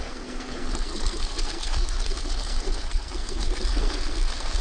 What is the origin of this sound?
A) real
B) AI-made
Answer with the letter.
B